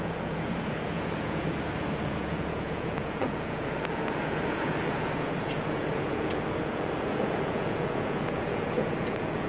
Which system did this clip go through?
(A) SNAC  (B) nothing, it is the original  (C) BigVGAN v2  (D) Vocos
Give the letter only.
D